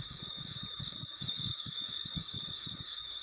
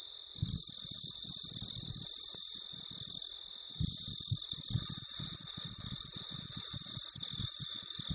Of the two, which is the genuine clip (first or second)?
second